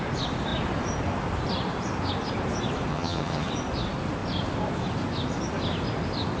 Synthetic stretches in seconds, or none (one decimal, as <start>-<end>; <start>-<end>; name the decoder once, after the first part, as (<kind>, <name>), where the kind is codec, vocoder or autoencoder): 2.9-3.5 (vocoder, HiFi-GAN)